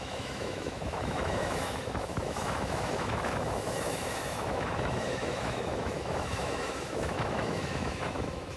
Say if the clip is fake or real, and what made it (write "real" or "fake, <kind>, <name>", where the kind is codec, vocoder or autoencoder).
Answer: fake, autoencoder, DAC-VAE